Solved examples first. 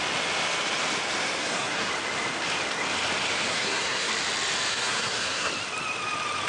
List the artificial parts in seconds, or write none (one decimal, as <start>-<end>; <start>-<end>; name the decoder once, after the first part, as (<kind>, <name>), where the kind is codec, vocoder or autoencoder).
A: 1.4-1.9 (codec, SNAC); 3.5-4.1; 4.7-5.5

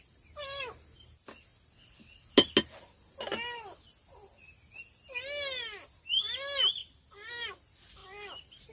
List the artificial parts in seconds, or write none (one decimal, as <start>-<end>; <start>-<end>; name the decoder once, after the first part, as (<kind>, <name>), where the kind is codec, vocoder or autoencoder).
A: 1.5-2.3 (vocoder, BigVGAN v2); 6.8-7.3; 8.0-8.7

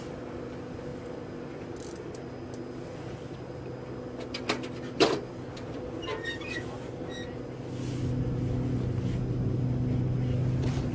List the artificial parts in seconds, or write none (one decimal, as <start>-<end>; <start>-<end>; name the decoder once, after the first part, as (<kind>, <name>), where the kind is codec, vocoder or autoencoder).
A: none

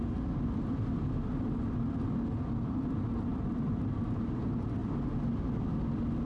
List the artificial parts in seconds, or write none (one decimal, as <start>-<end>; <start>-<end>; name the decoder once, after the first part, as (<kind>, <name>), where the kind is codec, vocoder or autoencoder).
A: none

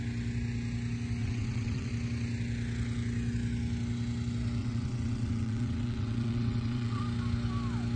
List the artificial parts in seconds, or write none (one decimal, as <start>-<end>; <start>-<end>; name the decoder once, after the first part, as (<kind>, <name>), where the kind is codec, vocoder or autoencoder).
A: 1.2-1.9 (vocoder, WaveNeXt); 4.6-7.0